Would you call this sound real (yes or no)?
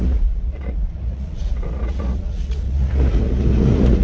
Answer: no